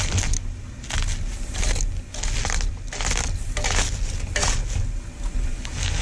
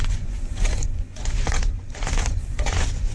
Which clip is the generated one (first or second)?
second